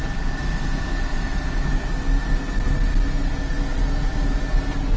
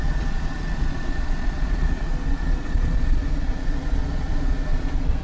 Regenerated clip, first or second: second